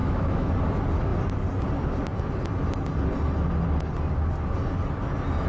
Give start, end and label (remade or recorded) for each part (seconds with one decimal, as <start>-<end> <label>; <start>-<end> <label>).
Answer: 0.0-0.5 remade; 0.5-5.5 recorded